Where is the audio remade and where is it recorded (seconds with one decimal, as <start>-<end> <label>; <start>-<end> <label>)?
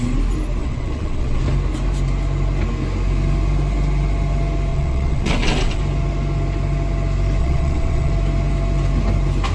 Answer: 0.0-0.6 recorded; 0.6-1.4 remade; 1.4-4.7 recorded; 4.7-5.8 remade; 5.8-7.4 recorded; 7.4-8.1 remade; 8.1-9.5 recorded